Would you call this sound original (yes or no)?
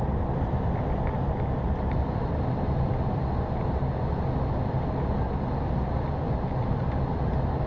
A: yes